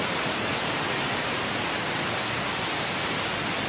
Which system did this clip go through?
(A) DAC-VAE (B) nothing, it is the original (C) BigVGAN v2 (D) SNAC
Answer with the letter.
B